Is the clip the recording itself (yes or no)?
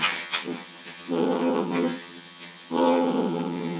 no